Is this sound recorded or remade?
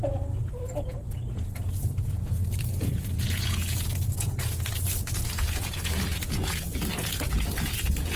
remade